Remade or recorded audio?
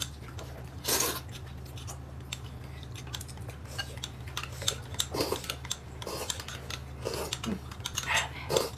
recorded